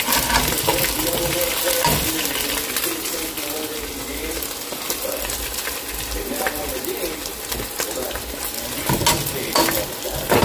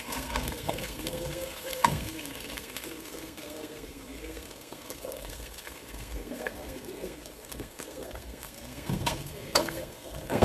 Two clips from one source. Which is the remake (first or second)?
second